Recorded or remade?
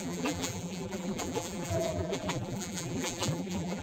remade